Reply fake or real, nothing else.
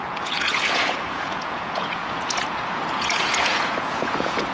fake